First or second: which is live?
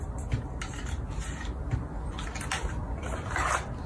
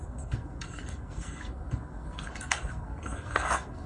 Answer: first